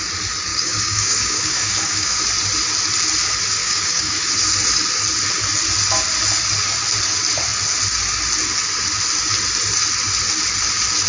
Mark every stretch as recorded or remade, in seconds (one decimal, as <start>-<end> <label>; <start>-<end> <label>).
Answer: 0.0-0.5 recorded; 0.5-2.2 remade; 2.2-3.6 recorded; 3.6-4.3 remade; 4.3-11.1 recorded